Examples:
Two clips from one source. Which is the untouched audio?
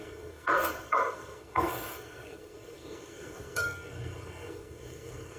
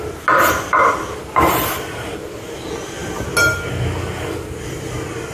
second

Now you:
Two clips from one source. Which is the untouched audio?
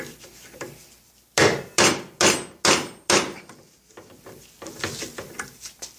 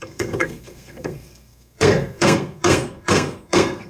first